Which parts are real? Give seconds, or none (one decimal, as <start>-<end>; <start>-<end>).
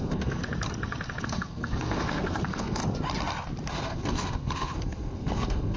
0.4-1.2; 2.8-3.7